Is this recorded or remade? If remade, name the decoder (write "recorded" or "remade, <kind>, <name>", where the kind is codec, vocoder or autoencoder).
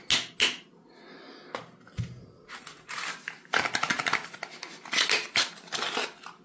recorded